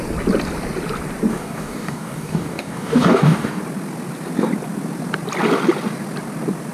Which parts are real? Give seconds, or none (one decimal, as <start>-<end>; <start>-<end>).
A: 0.0-1.3; 3.6-6.7